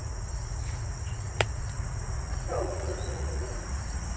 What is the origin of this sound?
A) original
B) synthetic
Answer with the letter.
B